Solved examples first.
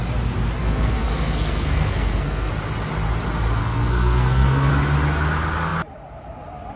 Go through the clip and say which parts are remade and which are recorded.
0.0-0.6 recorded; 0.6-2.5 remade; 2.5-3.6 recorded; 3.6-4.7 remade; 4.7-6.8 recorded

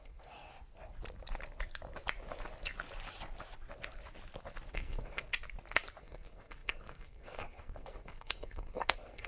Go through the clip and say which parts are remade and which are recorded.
0.0-0.5 remade; 0.5-4.7 recorded; 4.7-5.2 remade; 5.2-6.0 recorded; 6.0-9.3 remade

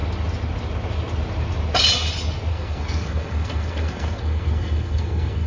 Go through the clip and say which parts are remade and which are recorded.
0.0-2.5 recorded; 2.5-5.5 remade

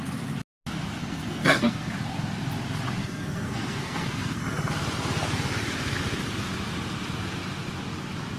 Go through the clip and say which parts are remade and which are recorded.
0.0-1.0 recorded; 1.0-1.9 remade; 1.9-3.0 recorded; 3.0-4.4 remade; 4.4-8.4 recorded

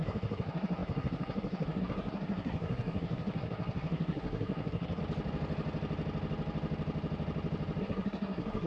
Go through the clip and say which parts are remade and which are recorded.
0.0-5.0 remade; 5.0-7.8 recorded; 7.8-8.7 remade

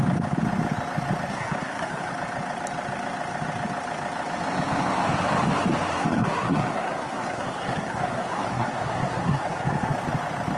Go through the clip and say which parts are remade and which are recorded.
0.0-1.3 recorded; 1.3-2.1 remade; 2.1-5.9 recorded; 5.9-10.0 remade; 10.0-10.6 recorded

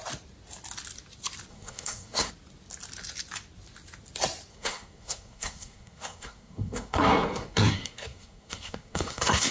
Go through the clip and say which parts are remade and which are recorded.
0.0-1.5 recorded; 1.5-2.3 remade; 2.3-4.5 recorded; 4.5-9.5 remade